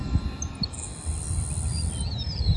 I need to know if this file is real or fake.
real